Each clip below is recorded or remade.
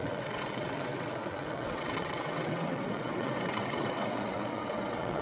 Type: remade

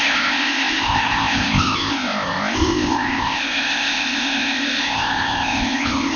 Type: remade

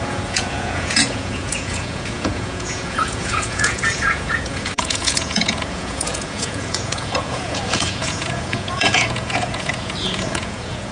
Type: remade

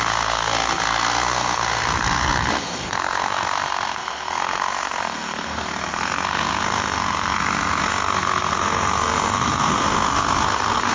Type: remade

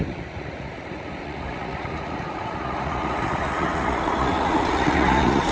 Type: remade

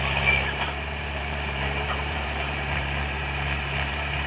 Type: remade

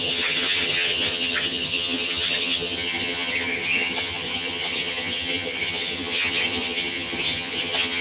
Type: remade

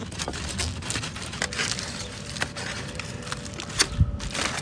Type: recorded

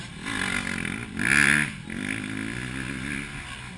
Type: recorded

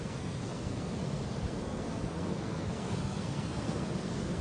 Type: remade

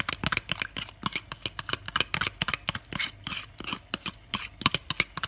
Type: recorded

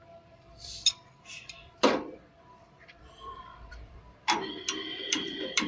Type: remade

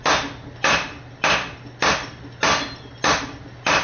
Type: recorded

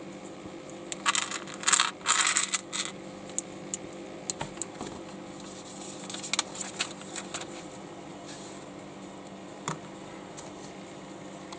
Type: recorded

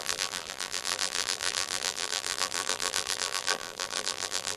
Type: remade